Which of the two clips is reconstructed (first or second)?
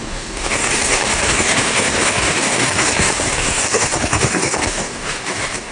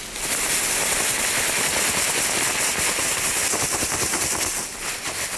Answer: first